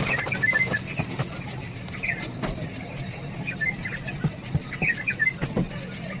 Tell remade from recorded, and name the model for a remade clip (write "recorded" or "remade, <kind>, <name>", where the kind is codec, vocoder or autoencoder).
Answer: recorded